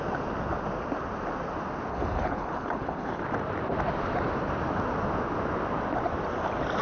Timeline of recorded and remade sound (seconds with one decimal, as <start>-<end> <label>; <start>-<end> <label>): 0.0-1.9 recorded; 1.9-3.2 remade; 3.2-6.8 recorded